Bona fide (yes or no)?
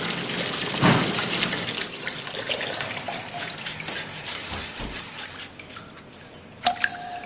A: yes